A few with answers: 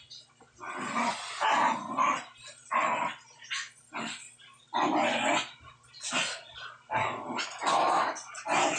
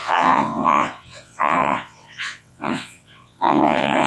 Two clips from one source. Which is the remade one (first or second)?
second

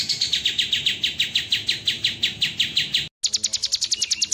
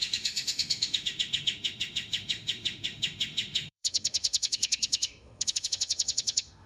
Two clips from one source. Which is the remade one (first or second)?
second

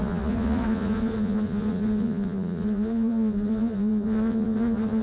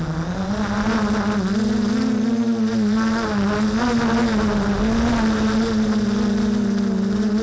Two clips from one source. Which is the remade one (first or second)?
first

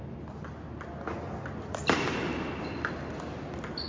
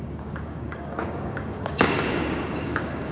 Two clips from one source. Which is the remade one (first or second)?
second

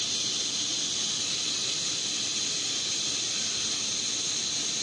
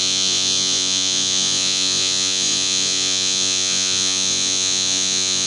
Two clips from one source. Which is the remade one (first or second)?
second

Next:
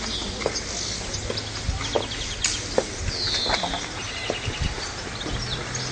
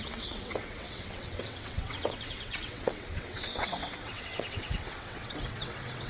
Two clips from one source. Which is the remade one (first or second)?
second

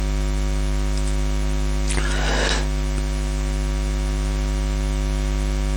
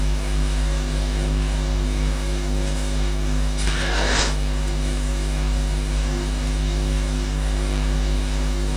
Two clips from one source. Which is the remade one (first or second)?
second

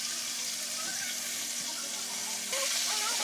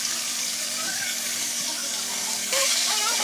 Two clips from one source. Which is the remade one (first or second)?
second